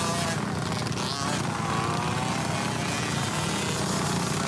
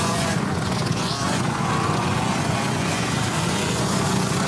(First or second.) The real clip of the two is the first